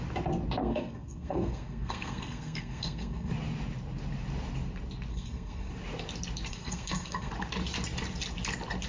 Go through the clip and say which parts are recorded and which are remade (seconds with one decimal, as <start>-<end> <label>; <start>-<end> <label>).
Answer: 0.0-0.6 recorded; 0.6-3.3 remade; 3.3-5.1 recorded; 5.1-5.7 remade; 5.7-6.5 recorded; 6.5-7.3 remade; 7.3-8.9 recorded